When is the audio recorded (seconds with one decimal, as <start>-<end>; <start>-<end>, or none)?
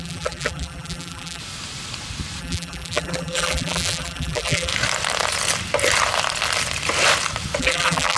1.4-2.4; 4.7-7.6